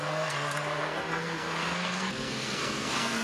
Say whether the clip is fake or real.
fake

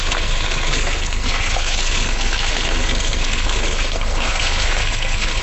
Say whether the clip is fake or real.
fake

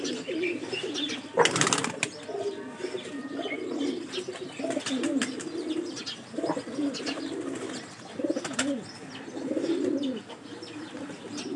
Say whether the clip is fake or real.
real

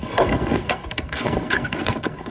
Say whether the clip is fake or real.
fake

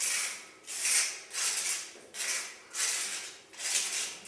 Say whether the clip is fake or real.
real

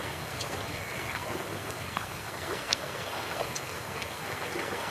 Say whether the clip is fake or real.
fake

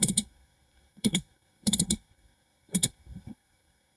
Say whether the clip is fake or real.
fake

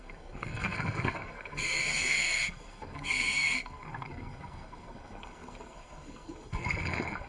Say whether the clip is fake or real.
fake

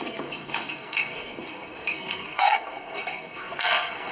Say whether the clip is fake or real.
fake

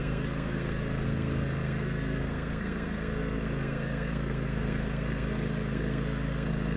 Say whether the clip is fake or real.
fake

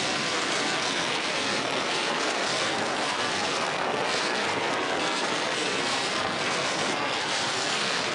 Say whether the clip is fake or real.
fake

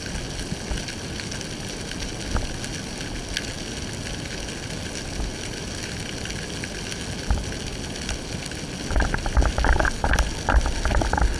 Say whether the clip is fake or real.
real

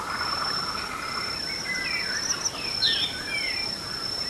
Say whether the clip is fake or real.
real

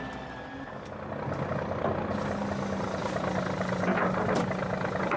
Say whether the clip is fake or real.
real